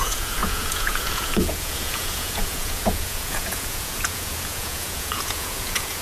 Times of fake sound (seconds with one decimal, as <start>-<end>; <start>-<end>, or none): 0.0-6.0